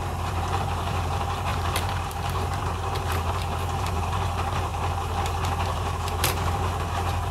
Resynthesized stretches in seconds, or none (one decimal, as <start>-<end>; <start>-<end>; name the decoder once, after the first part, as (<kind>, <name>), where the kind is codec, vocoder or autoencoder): 0.0-7.3 (vocoder, BigVGAN v2)